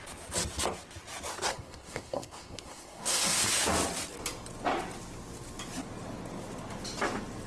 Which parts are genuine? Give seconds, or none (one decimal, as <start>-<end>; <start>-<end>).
0.0-1.5; 3.4-7.5